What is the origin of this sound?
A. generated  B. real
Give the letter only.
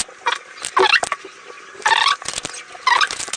B